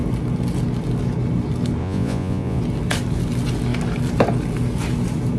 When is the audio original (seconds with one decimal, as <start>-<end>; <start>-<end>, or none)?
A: 0.0-1.8; 2.6-5.4